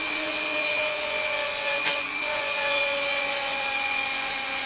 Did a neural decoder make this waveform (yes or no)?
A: yes